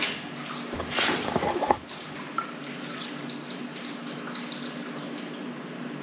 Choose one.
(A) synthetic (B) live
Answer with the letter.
B